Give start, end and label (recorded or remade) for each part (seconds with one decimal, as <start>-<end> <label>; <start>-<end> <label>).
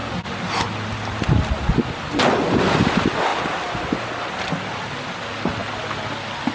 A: 0.0-6.5 recorded